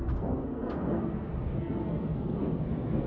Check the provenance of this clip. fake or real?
fake